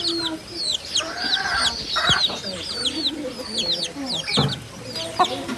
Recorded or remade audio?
recorded